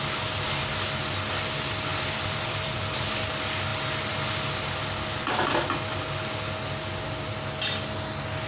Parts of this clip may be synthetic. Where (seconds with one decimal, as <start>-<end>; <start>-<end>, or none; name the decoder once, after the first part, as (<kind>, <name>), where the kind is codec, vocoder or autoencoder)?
1.9-3.2 (vocoder, BigVGAN v2)